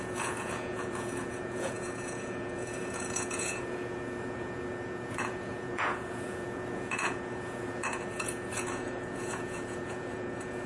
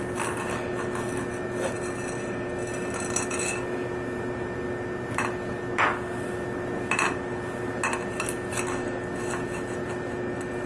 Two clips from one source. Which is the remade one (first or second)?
first